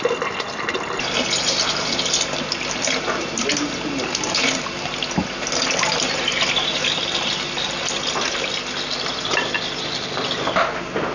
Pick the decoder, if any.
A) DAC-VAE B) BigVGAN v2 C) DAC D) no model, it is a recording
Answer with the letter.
D